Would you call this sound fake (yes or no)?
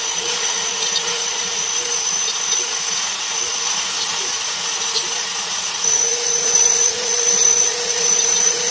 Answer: yes